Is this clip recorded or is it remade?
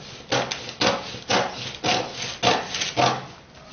recorded